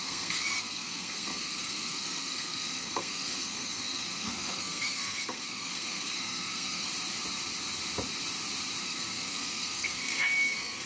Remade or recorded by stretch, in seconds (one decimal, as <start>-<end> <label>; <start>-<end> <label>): 0.0-6.9 remade; 6.9-8.8 recorded; 8.8-10.9 remade